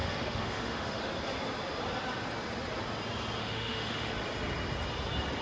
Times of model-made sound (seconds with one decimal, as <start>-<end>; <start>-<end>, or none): 0.0-1.0; 3.4-4.1

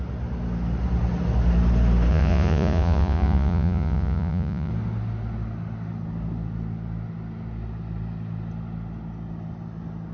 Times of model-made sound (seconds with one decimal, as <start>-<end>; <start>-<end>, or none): 2.1-4.7